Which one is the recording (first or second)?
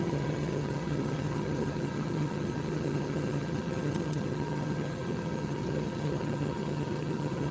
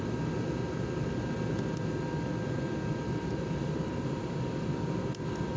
second